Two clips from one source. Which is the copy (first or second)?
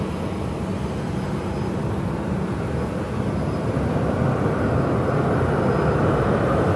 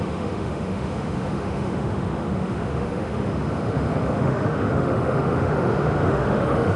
second